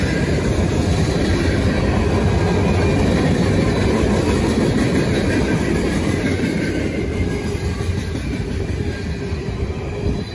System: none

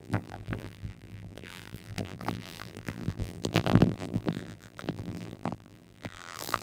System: vocoder, BigVGAN v2